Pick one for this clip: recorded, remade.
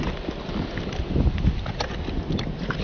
remade